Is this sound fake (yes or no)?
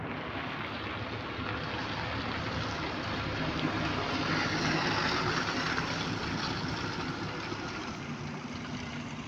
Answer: no